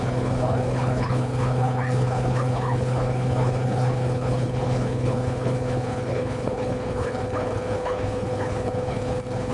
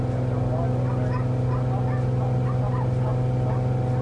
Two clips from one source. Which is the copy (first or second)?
first